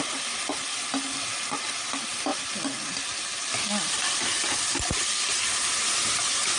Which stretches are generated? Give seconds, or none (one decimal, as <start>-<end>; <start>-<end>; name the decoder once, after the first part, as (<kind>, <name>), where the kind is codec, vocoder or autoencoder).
none